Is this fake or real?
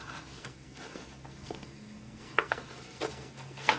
fake